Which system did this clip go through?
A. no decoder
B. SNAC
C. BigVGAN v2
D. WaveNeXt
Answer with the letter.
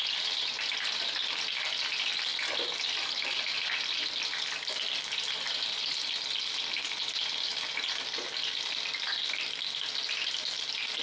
A